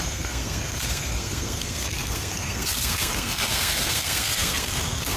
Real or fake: fake